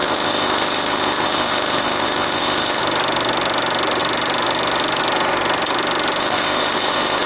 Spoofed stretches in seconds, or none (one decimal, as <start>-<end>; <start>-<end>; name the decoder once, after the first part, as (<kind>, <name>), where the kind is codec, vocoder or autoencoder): 0.0-2.8 (codec, ZipCodec); 6.2-7.3

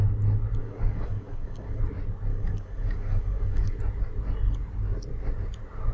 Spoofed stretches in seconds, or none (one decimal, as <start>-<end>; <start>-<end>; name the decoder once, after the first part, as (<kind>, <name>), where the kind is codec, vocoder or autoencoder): 0.6-1.8 (codec, DAC); 2.3-3.8